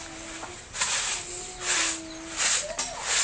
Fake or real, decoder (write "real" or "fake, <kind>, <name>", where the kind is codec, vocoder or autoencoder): real